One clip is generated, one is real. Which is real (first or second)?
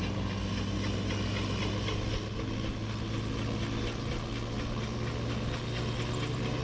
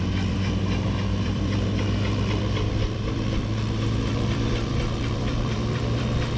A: first